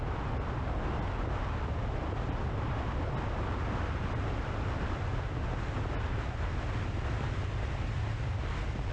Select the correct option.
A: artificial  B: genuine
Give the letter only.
B